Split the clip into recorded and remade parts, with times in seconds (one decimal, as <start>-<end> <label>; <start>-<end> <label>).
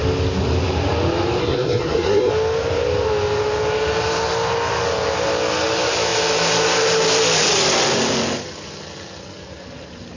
0.0-1.4 recorded; 1.4-2.3 remade; 2.3-10.2 recorded